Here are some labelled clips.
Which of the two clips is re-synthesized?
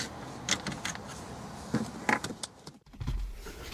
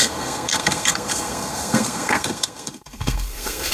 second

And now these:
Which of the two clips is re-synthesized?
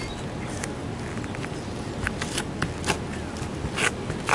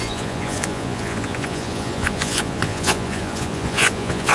second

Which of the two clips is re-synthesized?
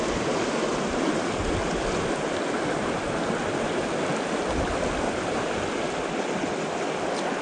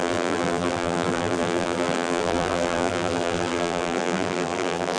second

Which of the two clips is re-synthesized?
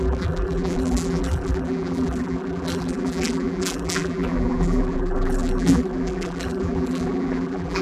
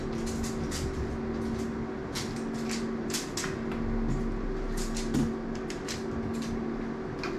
first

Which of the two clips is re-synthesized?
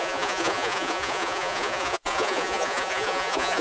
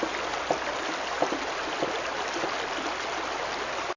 first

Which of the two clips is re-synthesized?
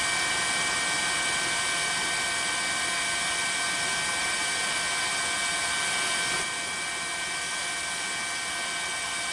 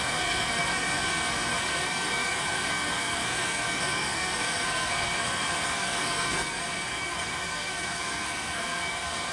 second